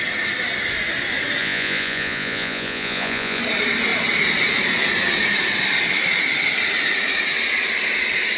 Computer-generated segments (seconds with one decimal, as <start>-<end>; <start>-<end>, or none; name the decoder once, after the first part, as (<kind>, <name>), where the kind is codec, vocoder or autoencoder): 1.4-3.4 (vocoder, Vocos)